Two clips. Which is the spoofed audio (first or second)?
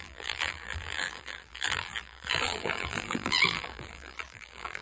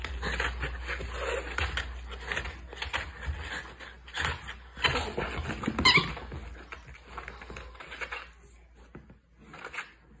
first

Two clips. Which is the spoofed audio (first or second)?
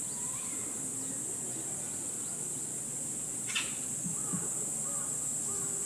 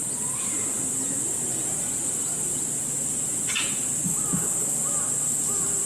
second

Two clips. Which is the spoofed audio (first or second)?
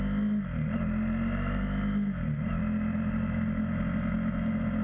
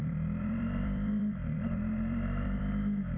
second